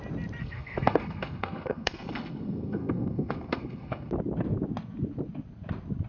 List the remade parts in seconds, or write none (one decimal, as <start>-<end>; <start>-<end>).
0.4-4.1